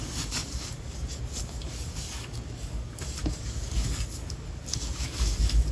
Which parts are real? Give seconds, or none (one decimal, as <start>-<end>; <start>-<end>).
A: none